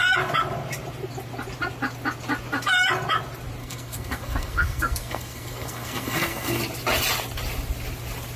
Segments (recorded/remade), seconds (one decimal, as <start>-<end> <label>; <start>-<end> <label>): 0.0-3.6 recorded; 3.6-6.6 remade; 6.6-8.4 recorded